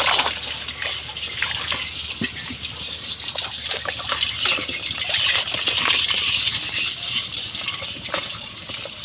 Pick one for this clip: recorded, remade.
recorded